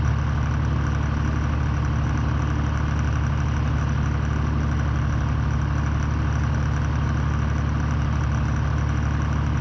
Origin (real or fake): real